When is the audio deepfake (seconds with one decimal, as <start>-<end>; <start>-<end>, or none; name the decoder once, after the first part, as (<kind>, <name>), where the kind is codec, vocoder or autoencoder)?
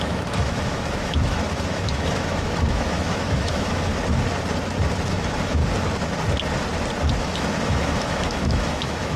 0.0-3.9 (autoencoder, DAC-VAE); 5.1-5.6; 7.2-9.2